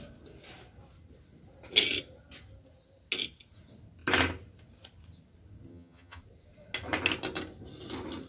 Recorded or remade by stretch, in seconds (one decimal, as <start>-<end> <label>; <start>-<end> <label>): 0.0-5.7 recorded; 5.7-6.2 remade; 6.2-8.3 recorded

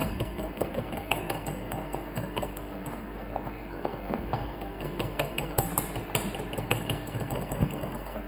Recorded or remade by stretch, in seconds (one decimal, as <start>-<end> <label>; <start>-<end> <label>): 0.0-5.7 remade; 5.7-6.6 recorded; 6.6-8.3 remade

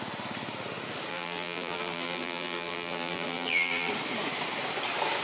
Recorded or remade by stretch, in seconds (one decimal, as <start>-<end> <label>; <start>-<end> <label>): 0.0-1.1 recorded; 1.1-3.9 remade; 3.9-5.2 recorded

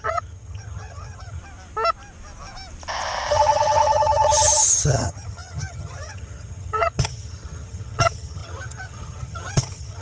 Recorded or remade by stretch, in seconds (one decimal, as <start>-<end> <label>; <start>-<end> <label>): 0.0-1.4 remade; 1.4-3.3 recorded; 3.3-10.0 remade

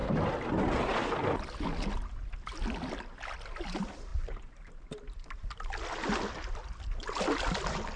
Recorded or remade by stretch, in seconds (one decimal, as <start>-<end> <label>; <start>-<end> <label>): 0.0-4.1 recorded; 4.1-4.9 remade; 4.9-8.0 recorded

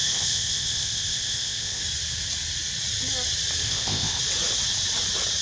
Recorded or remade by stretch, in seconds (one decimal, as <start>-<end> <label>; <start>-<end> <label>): 0.0-1.8 remade; 1.8-3.6 recorded; 3.6-4.2 remade; 4.2-5.4 recorded